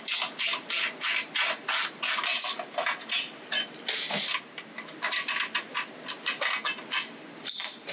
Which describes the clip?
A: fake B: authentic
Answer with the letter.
B